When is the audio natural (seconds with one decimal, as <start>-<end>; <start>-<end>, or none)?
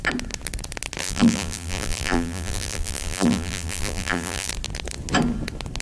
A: 0.0-1.0; 4.5-5.8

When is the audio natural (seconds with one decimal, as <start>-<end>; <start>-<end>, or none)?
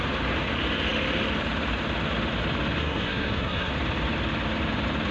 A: 0.0-2.8; 3.7-5.1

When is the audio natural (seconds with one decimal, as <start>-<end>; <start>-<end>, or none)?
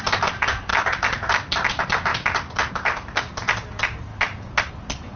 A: 0.0-5.2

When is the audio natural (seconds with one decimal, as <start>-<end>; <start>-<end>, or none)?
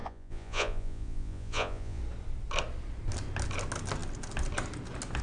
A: 2.0-5.2